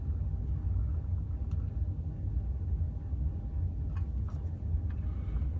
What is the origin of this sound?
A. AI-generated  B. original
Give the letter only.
B